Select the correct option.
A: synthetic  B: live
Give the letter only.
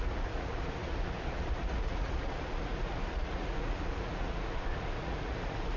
A